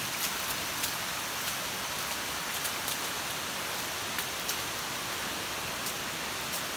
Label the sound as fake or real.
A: real